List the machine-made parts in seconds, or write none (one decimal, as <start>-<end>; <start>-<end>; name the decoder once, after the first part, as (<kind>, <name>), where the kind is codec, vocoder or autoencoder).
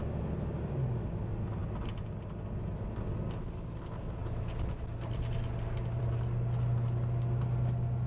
none